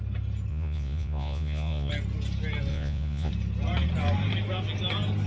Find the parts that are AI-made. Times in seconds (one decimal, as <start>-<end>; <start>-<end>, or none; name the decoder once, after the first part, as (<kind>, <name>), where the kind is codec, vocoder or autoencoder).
0.5-1.9 (vocoder, Vocos); 2.7-3.3